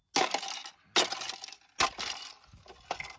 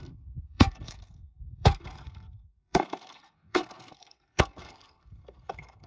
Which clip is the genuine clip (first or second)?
first